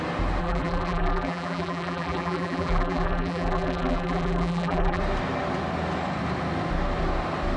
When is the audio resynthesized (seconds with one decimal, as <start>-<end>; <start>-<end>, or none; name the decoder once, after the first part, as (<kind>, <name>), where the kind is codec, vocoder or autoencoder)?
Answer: 0.4-5.0 (vocoder, BigVGAN v2)